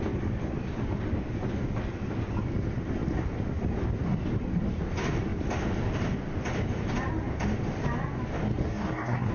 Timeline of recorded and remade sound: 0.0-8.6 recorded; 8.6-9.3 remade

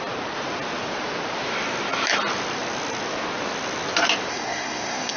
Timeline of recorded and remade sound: 0.0-4.3 recorded; 4.3-5.2 remade

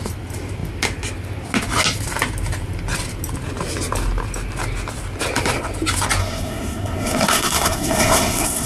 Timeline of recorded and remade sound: 0.0-6.2 recorded; 6.2-8.7 remade

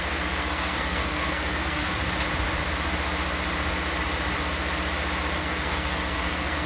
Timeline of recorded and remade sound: 0.0-1.9 remade; 1.9-5.4 recorded; 5.4-6.7 remade

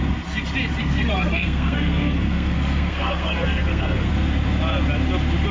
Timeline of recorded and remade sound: 0.0-0.8 recorded; 0.8-4.1 remade; 4.1-5.5 recorded

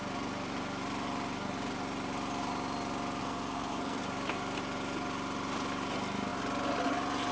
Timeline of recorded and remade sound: 0.0-3.2 recorded; 3.2-4.0 remade; 4.0-7.3 recorded

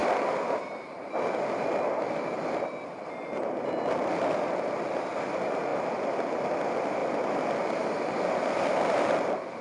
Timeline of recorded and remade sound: 0.0-9.6 recorded